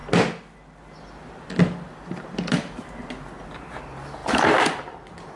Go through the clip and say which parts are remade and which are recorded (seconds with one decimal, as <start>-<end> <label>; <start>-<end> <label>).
0.0-5.4 recorded

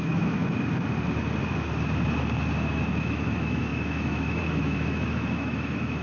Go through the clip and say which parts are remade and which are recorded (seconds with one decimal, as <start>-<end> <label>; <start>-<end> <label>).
0.0-0.4 remade; 0.4-2.9 recorded; 2.9-6.0 remade

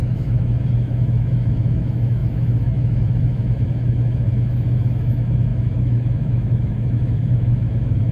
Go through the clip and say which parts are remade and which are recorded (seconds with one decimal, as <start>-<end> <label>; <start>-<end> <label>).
0.0-8.1 remade

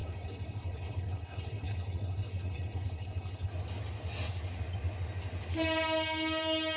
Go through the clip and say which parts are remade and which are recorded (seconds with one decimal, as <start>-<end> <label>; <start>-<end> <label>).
0.0-3.5 remade; 3.5-6.8 recorded

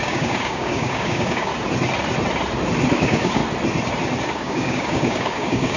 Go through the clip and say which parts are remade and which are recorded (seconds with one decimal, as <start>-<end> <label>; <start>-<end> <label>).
0.0-1.5 remade; 1.5-2.9 recorded; 2.9-3.4 remade; 3.4-4.3 recorded; 4.3-5.8 remade

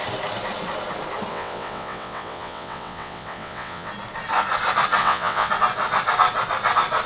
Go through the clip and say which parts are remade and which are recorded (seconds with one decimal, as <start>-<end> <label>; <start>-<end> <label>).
0.0-1.3 recorded; 1.3-3.9 remade; 3.9-5.0 recorded; 5.0-5.5 remade; 5.5-7.1 recorded